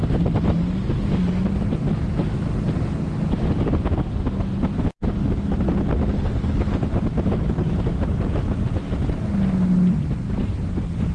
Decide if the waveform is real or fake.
real